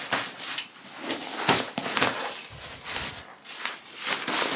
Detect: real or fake real